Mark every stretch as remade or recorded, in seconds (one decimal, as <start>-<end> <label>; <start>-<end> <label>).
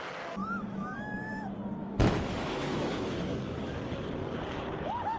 0.0-0.4 recorded; 0.4-1.4 remade; 1.4-1.8 recorded; 1.8-3.8 remade; 3.8-5.2 recorded